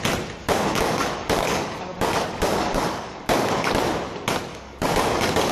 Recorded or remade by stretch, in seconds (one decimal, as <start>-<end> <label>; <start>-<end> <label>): 0.0-0.4 recorded; 0.4-3.7 remade; 3.7-4.5 recorded; 4.5-5.5 remade